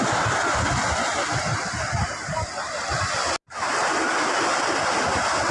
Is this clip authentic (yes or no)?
yes